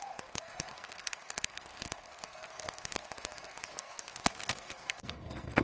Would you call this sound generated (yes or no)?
yes